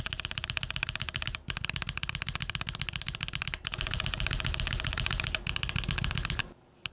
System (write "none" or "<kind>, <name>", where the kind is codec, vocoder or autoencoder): none